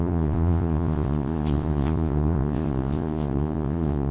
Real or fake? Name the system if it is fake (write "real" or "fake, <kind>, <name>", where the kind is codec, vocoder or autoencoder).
fake, vocoder, Vocos